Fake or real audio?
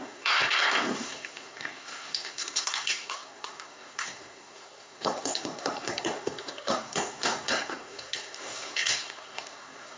fake